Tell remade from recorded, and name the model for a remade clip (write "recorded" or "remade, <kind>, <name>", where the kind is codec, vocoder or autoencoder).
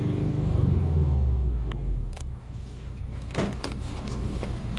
remade, codec, DAC